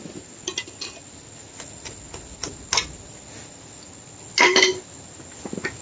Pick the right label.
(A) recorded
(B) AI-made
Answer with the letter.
A